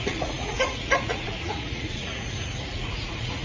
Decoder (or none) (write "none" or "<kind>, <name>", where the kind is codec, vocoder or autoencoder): vocoder, Vocos